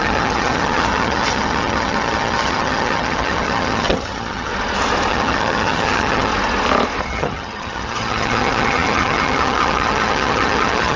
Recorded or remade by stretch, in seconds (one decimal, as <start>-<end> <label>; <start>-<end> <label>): 0.0-4.5 remade; 4.5-5.1 recorded; 5.1-6.3 remade; 6.3-7.0 recorded; 7.0-11.0 remade